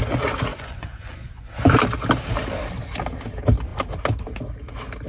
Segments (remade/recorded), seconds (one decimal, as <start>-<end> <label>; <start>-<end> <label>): 0.0-0.5 recorded; 0.5-1.7 remade; 1.7-5.1 recorded

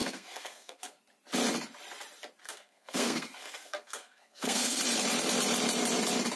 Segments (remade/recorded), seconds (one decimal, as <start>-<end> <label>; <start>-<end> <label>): 0.0-1.0 remade; 1.0-2.4 recorded; 2.4-4.8 remade; 4.8-6.4 recorded